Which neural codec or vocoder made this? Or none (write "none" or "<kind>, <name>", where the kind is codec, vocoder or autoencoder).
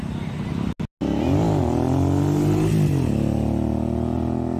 none